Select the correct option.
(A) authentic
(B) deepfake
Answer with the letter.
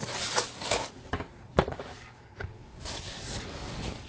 B